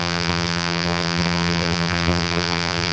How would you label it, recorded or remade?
remade